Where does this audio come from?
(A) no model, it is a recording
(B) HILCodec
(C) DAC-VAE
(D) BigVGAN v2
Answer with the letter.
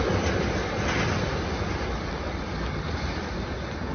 A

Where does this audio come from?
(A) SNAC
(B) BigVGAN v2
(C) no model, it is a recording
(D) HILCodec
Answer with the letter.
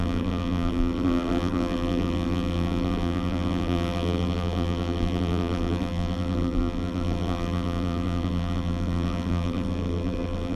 B